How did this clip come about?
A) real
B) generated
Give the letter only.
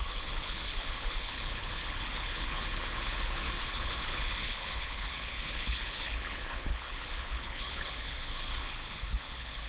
B